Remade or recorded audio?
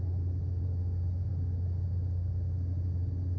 recorded